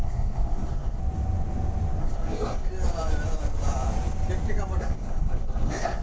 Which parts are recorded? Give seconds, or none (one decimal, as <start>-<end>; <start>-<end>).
1.0-2.0; 2.7-4.8